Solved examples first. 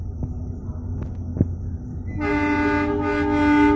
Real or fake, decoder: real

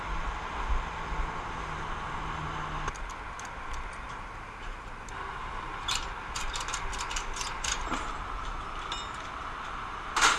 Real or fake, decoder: real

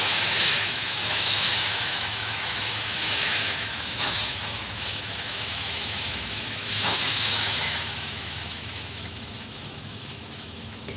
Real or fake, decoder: fake, autoencoder, DAC-VAE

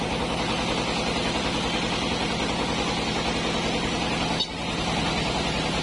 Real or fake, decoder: real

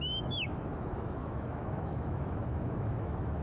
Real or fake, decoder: fake, autoencoder, DAC-VAE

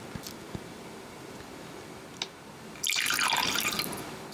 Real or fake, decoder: real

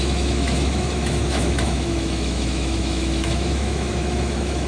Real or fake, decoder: fake, autoencoder, DAC-VAE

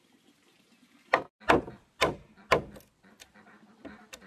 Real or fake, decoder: real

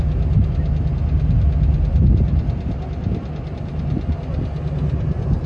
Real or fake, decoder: real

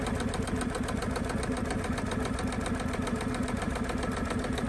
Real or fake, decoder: real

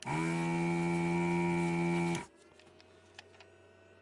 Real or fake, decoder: real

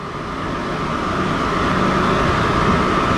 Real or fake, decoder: real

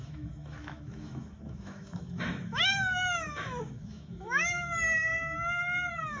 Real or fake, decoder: fake, autoencoder, DAC-VAE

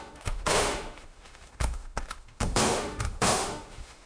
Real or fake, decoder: fake, autoencoder, DAC-VAE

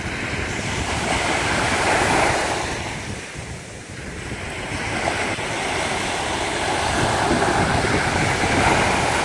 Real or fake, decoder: real